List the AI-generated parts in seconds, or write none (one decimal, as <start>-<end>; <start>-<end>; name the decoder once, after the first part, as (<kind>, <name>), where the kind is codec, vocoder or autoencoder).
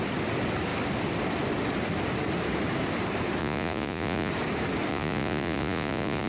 3.4-4.3 (vocoder, Vocos); 4.9-6.3